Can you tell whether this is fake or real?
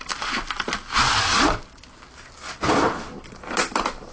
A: real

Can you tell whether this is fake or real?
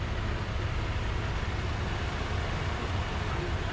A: real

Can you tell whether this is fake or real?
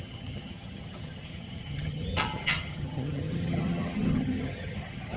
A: fake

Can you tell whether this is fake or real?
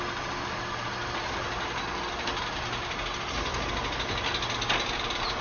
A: real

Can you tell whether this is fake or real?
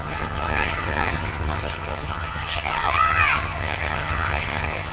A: fake